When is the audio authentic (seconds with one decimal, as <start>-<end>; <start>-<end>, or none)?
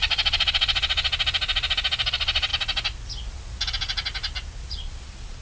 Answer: 1.1-2.1; 2.5-4.7